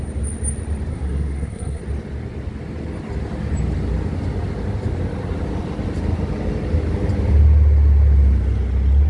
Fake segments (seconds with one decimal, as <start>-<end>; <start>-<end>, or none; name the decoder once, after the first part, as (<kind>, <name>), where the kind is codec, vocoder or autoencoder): 0.9-1.8 (codec, SNAC)